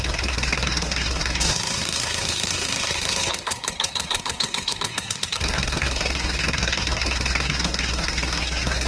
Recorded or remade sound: remade